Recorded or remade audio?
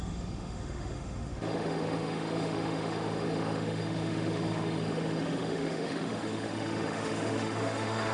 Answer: remade